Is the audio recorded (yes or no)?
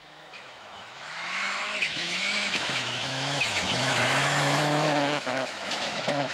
no